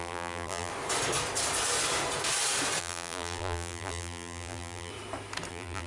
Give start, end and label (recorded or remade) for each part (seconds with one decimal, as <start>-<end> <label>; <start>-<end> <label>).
0.0-0.7 remade; 0.7-2.8 recorded; 2.8-4.9 remade; 4.9-5.5 recorded; 5.5-5.9 remade